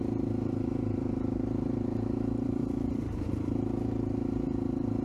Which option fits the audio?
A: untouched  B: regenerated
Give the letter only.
B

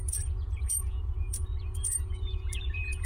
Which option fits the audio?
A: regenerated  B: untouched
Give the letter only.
A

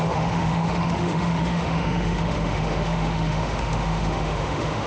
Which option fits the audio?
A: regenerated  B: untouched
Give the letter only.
A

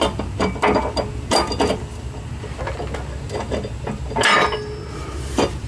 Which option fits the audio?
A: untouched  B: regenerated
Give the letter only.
A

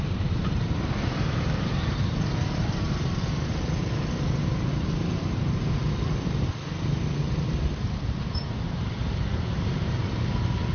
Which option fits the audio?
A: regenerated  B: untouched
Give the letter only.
A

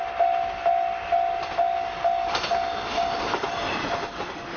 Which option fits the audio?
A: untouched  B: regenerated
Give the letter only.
A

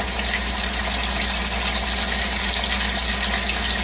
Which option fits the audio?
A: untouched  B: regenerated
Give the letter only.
A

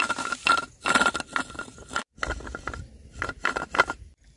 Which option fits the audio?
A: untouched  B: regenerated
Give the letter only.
A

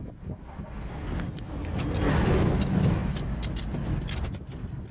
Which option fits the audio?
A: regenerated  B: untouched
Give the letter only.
B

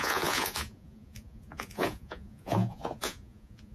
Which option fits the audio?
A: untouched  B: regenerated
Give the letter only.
B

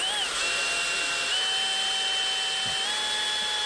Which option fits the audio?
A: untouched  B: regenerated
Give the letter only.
A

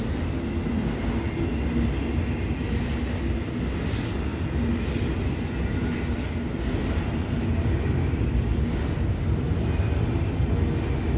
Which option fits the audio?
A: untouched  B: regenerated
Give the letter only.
A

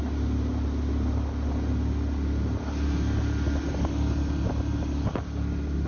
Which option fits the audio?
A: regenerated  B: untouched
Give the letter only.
B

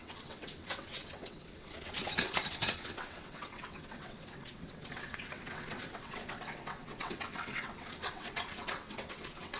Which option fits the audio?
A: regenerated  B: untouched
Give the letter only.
A